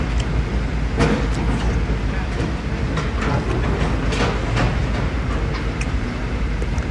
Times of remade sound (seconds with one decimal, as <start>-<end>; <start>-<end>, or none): 4.8-6.9